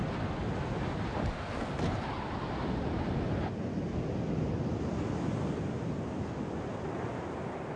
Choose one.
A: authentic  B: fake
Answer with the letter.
A